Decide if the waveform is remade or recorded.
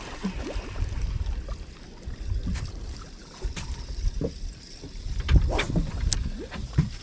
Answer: recorded